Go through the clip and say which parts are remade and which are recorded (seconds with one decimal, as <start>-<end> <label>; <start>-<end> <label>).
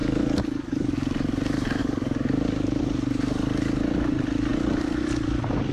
0.0-0.9 remade; 0.9-1.8 recorded; 1.8-2.8 remade; 2.8-5.7 recorded